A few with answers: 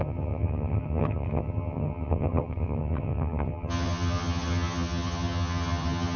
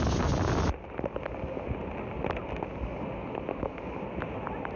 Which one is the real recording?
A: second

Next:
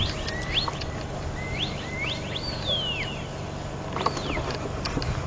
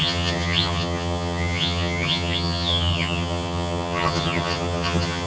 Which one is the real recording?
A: first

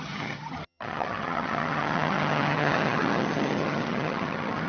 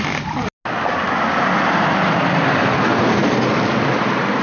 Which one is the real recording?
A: second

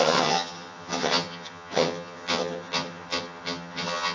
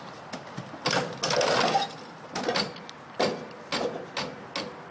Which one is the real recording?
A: second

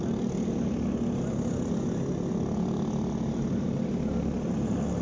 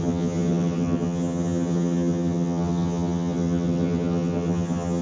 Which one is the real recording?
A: first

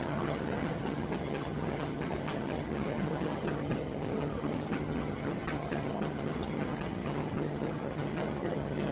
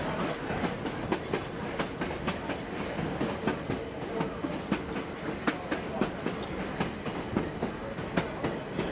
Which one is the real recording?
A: second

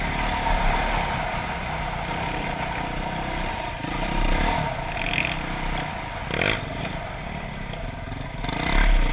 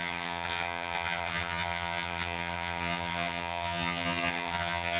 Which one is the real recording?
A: first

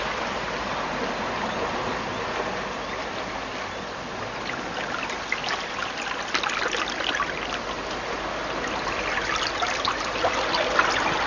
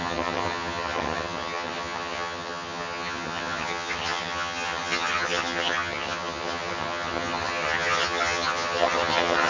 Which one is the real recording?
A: first